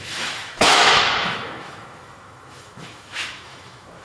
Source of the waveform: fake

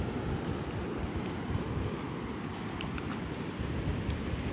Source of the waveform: real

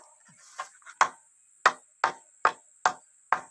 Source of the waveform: real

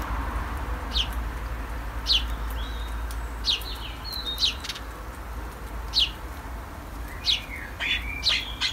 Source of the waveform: real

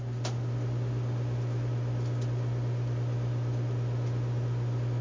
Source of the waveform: real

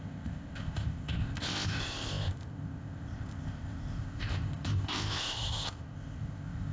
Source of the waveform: fake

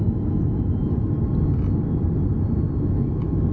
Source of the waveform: real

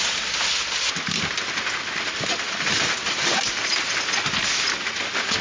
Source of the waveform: real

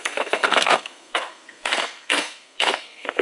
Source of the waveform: fake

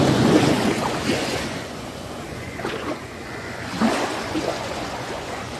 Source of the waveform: fake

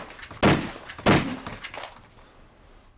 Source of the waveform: real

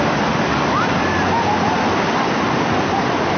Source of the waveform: real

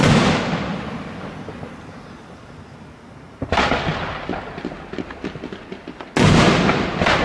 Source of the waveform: real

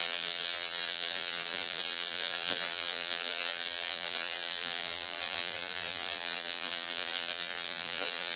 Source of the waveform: fake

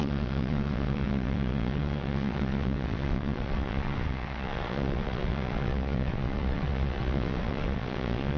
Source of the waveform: fake